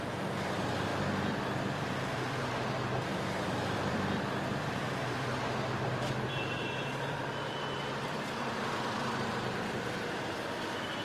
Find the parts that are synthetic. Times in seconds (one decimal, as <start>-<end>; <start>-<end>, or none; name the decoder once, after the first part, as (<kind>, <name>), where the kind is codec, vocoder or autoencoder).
0.0-0.9 (vocoder, BigVGAN v2); 2.0-11.0